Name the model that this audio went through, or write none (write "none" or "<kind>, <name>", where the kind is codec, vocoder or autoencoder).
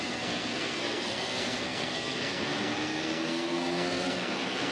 codec, SNAC